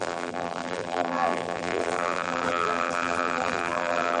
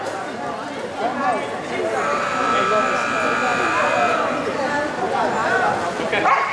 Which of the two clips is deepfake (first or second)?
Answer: first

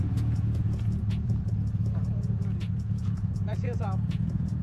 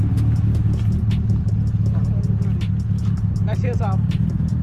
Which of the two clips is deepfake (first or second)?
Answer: first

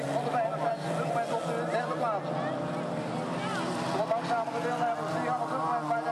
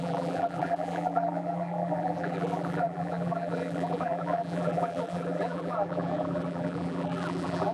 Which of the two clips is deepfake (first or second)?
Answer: second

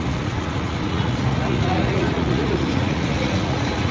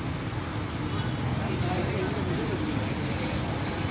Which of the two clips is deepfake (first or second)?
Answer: first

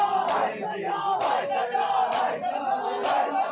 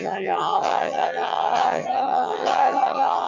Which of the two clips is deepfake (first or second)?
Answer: second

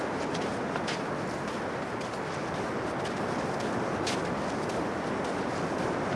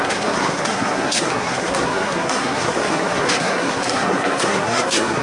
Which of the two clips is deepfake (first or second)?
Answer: second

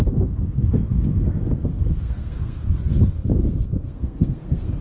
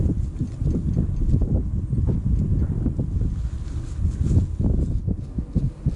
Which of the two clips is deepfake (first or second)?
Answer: first